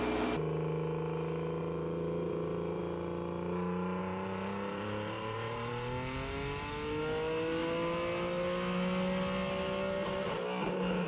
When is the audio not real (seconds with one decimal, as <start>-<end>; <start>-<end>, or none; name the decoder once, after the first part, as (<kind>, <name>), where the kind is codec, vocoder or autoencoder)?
1.6-2.8 (vocoder, BigVGAN v2); 4.0-5.7